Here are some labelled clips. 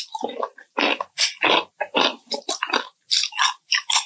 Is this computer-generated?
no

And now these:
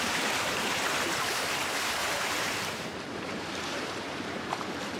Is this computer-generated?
yes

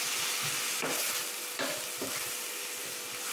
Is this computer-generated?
no